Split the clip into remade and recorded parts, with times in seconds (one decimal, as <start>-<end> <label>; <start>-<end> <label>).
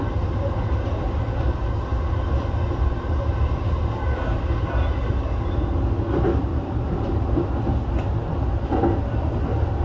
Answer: 0.0-6.5 recorded; 6.5-7.3 remade; 7.3-9.8 recorded